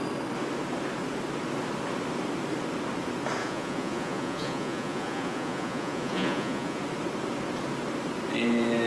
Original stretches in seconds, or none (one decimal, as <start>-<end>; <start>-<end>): 0.0-3.4; 6.8-8.9